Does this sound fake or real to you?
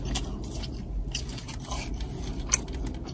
real